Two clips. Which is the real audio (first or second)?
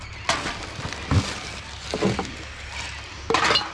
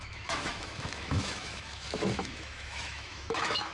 first